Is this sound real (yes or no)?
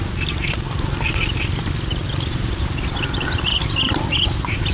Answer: yes